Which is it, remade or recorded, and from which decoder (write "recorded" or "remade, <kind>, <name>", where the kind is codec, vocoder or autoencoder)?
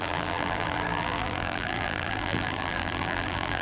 remade, vocoder, BigVGAN v2